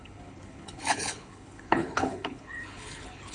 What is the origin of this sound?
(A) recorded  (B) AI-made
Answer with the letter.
B